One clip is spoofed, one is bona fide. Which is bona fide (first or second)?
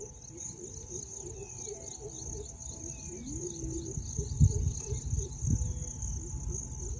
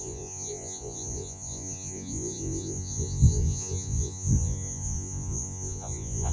first